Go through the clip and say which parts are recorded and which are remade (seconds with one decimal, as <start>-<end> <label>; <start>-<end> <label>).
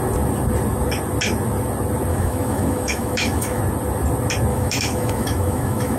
0.0-2.1 recorded; 2.1-3.6 remade; 3.6-4.5 recorded; 4.5-6.0 remade